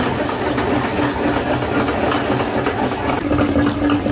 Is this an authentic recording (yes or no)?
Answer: yes